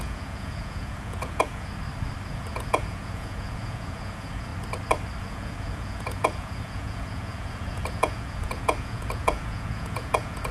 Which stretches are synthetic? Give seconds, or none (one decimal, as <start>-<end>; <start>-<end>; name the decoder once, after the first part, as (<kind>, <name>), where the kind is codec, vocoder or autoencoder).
0.0-1.7 (vocoder, Vocos); 2.3-4.5; 5.2-10.5